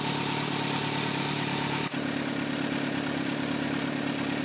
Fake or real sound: real